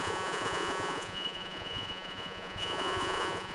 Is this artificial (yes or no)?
yes